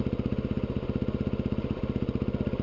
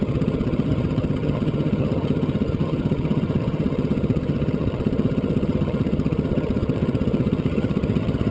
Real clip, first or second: first